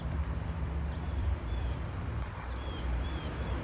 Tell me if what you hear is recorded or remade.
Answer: remade